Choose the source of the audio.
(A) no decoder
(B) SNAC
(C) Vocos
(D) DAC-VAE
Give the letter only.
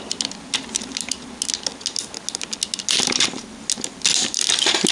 A